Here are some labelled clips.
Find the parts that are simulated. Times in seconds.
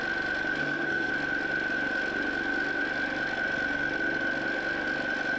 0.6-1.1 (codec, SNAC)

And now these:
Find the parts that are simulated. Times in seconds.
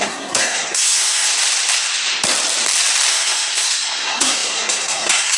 0.0-1.3 (codec, SNAC); 3.1-5.4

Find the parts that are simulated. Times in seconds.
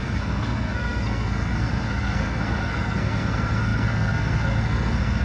0.0-5.2 (codec, SNAC)